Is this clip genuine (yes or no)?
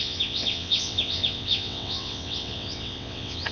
no